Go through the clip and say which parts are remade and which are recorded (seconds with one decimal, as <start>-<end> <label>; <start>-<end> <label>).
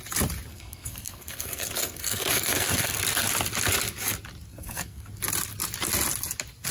0.0-0.5 recorded; 0.5-3.0 remade; 3.0-4.5 recorded; 4.5-5.1 remade; 5.1-6.7 recorded